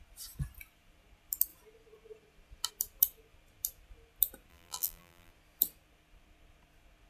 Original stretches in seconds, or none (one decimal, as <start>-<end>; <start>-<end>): 0.0-4.5; 5.3-7.1